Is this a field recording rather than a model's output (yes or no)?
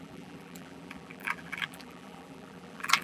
no